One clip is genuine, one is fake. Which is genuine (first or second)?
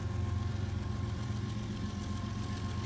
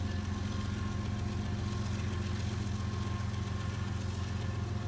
second